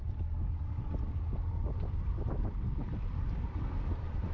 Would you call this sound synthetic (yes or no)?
yes